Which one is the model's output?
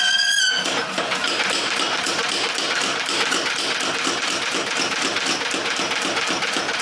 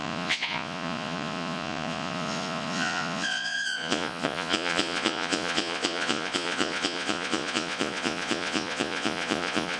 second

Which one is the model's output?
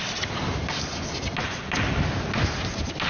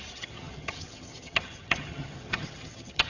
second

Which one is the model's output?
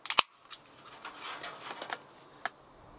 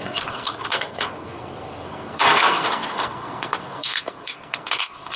second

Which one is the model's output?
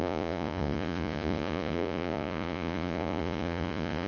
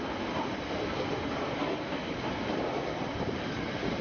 first